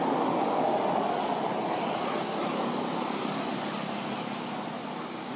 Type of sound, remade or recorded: recorded